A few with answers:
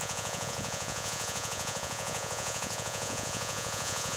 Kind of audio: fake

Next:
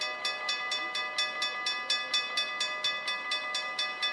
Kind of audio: real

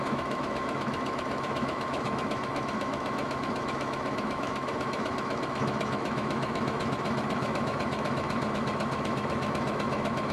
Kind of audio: fake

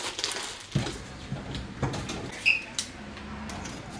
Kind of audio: real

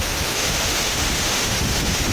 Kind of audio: fake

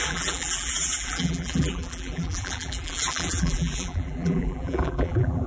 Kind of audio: fake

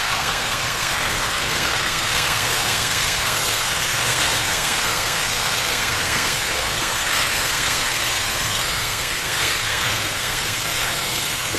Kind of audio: fake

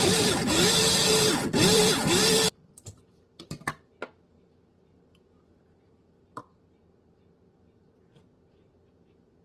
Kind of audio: fake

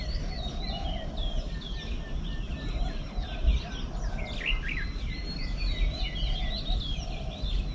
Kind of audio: real